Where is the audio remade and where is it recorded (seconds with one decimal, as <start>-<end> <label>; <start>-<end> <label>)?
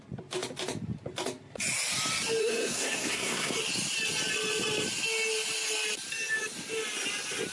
0.0-2.4 recorded; 2.4-3.5 remade; 3.5-7.5 recorded